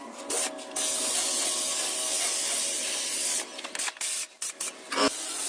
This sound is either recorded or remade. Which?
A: recorded